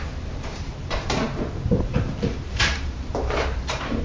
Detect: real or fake fake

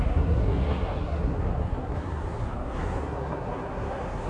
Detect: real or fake fake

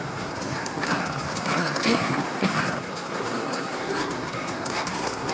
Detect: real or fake fake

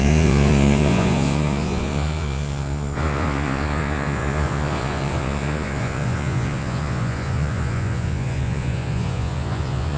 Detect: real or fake fake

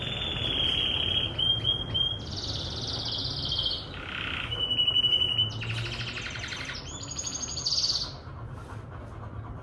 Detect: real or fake real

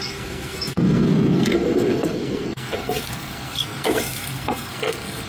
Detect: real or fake fake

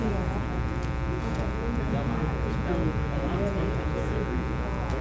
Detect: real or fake real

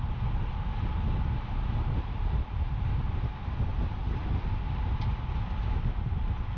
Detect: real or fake real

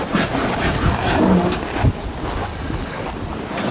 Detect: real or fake real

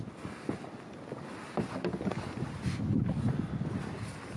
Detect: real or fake real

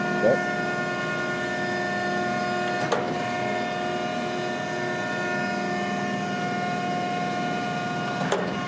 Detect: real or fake real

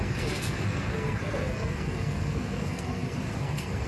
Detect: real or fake fake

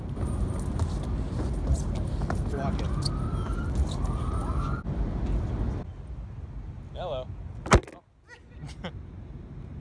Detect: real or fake real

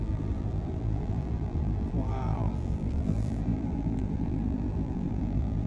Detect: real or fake fake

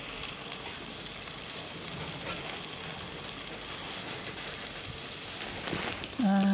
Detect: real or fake real